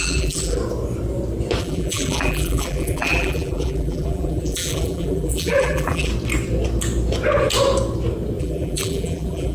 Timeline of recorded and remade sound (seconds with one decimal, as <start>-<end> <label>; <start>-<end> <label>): 0.0-0.6 remade; 0.6-1.6 recorded; 1.6-6.1 remade; 6.1-8.4 recorded; 8.4-9.5 remade